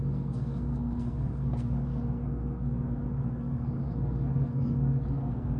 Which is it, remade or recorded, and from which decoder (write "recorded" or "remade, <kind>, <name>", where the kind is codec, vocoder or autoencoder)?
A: remade, codec, SNAC